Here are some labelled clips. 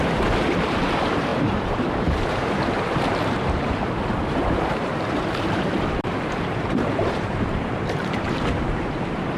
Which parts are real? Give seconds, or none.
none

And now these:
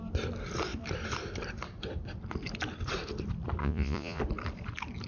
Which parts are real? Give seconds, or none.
0.0-3.6; 4.2-5.1

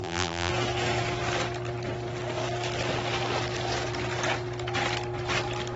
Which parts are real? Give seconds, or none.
0.5-5.8

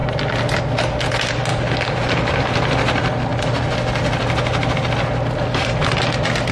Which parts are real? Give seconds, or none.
0.0-6.5